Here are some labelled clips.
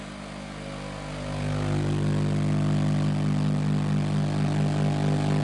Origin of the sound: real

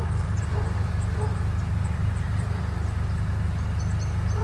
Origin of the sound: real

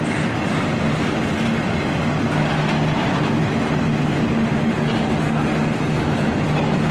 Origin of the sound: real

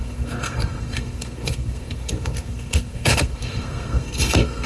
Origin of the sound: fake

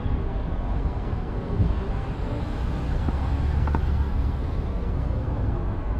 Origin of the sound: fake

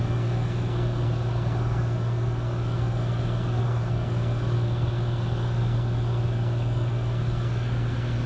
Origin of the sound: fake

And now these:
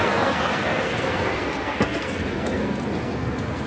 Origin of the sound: fake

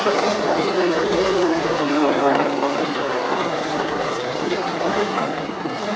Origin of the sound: fake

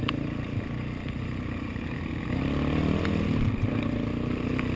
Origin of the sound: real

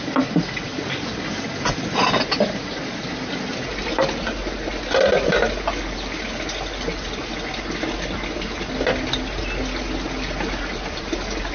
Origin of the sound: real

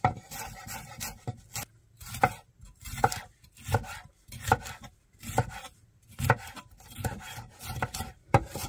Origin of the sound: real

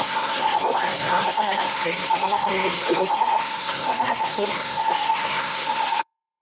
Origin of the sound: fake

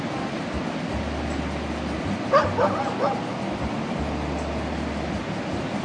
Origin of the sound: real